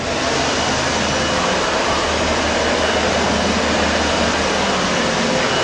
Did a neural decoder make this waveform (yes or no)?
no